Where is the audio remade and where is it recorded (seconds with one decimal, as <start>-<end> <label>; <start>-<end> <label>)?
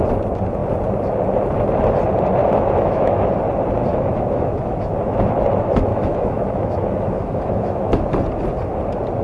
0.0-2.4 recorded; 2.4-3.3 remade; 3.3-3.9 recorded; 3.9-5.3 remade; 5.3-5.9 recorded; 5.9-8.0 remade; 8.0-9.2 recorded